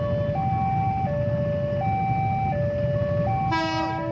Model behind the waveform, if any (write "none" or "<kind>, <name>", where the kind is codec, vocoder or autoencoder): none